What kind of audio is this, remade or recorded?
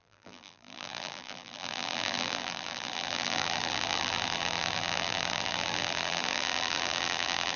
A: remade